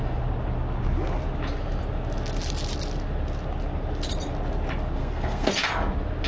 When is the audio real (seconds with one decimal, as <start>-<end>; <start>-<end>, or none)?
0.0-5.0; 5.5-6.3

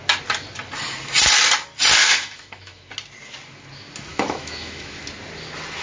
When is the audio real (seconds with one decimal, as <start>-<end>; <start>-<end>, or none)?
0.0-2.0; 2.9-4.1; 5.0-5.8

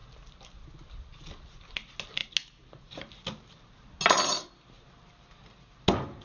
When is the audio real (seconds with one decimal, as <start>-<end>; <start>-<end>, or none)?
0.0-6.2

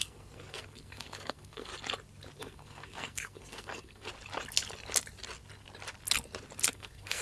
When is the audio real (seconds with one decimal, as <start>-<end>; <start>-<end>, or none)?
1.7-2.4; 4.1-6.7

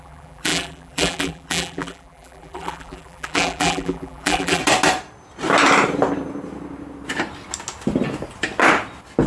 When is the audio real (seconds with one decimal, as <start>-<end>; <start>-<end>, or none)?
4.6-9.3